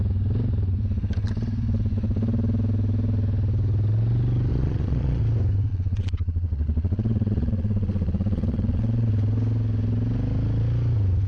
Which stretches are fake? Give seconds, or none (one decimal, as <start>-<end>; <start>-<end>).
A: 4.5-5.2; 5.7-9.1